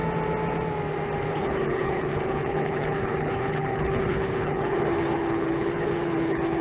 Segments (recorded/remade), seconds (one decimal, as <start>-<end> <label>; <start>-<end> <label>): 0.0-1.3 recorded; 1.3-6.6 remade